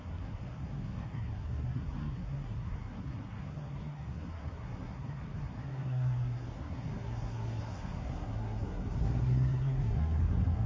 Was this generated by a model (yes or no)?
yes